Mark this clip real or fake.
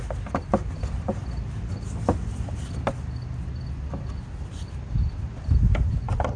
real